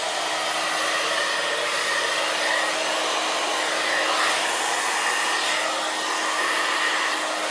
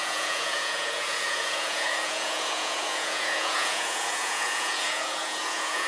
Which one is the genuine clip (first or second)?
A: first